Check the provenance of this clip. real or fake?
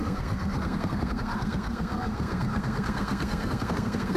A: fake